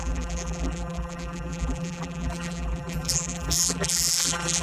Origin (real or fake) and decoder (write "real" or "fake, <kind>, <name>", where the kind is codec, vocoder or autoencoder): fake, vocoder, BigVGAN v2